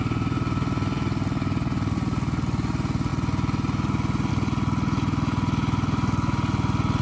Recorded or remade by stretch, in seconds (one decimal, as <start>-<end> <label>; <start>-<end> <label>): 0.0-7.0 recorded

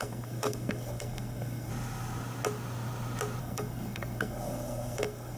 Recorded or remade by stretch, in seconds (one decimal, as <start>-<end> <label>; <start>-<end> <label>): 0.0-1.7 remade; 1.7-3.4 recorded; 3.4-5.4 remade

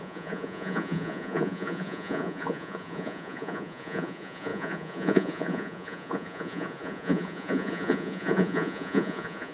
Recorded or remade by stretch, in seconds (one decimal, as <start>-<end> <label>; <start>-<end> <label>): 0.0-9.5 remade

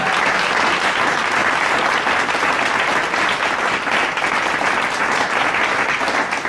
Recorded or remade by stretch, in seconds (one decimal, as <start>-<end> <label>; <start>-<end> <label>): 0.0-6.5 recorded

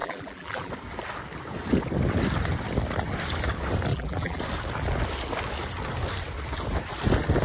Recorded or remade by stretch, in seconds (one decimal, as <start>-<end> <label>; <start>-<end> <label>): 0.0-0.7 remade; 0.7-3.9 recorded; 3.9-4.4 remade; 4.4-7.4 recorded

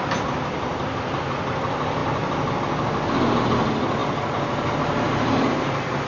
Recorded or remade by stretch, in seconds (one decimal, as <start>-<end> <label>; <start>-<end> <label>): 0.0-6.1 recorded

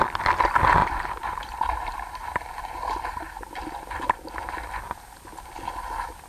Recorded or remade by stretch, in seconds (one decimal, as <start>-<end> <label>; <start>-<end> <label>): 0.0-0.8 recorded; 0.8-4.3 remade; 4.3-6.3 recorded

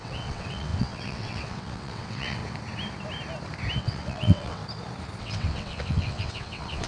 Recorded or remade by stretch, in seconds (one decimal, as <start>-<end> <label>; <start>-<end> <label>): 0.0-2.4 remade; 2.4-3.8 recorded; 3.8-4.6 remade; 4.6-5.2 recorded; 5.2-6.9 remade